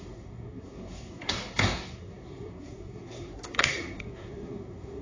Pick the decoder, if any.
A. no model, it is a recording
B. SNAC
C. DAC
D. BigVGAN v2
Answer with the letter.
B